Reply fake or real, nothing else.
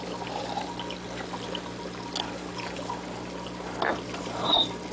real